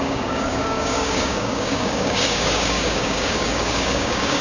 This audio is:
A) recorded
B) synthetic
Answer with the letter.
B